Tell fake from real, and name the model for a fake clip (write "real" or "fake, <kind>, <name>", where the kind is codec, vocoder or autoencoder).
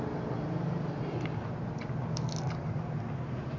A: real